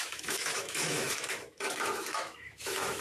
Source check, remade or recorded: remade